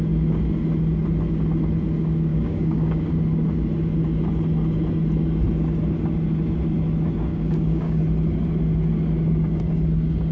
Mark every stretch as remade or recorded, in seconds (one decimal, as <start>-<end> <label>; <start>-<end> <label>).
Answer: 0.0-2.3 recorded; 2.3-3.1 remade; 3.1-7.3 recorded; 7.3-8.0 remade; 8.0-10.3 recorded